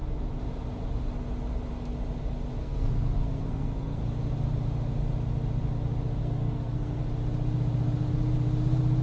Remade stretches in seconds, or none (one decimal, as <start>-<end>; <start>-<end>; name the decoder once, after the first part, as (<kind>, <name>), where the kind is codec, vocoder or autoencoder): 2.6-4.0 (codec, SNAC); 6.2-7.0